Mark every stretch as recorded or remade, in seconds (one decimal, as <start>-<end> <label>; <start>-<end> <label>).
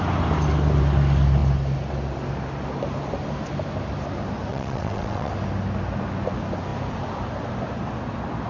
0.0-4.5 recorded; 4.5-5.3 remade; 5.3-8.5 recorded